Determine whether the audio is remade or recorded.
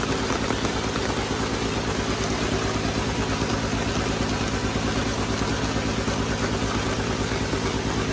recorded